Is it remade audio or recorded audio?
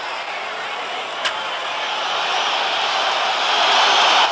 remade